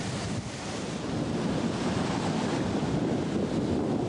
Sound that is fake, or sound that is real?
real